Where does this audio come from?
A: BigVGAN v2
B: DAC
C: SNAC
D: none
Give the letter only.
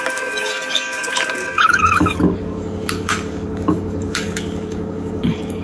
B